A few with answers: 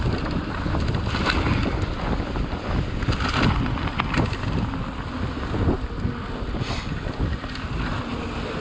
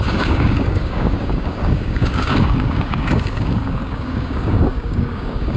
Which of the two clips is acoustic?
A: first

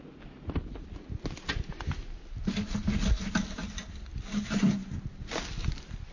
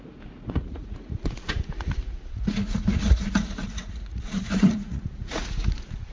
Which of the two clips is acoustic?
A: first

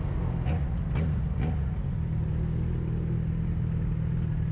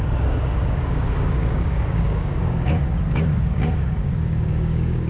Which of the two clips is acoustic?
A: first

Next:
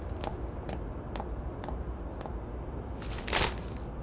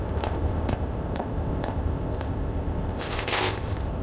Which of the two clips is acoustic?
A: first